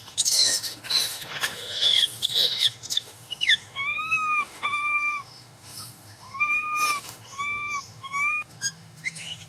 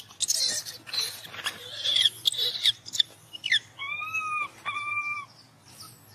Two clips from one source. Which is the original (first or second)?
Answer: second